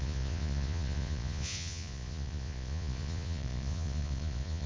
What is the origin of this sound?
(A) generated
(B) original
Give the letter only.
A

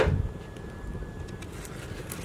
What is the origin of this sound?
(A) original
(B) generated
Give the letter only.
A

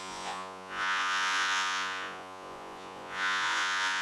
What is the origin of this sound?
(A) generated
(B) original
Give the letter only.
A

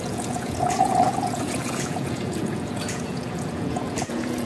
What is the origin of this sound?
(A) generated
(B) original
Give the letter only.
A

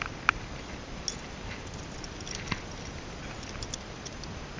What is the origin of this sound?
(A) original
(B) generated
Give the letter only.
A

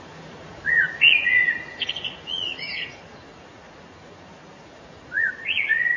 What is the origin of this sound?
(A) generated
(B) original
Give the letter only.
A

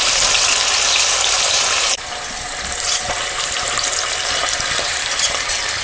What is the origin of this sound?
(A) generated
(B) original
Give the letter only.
B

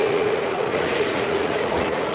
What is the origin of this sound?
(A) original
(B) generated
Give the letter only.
B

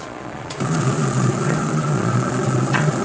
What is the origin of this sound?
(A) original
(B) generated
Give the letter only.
B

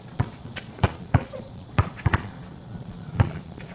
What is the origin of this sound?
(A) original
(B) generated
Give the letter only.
B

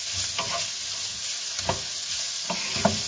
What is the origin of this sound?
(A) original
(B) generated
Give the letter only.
A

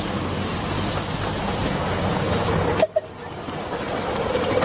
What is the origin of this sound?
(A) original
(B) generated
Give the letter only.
A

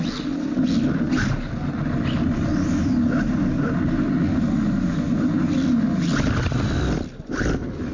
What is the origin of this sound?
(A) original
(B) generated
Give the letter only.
A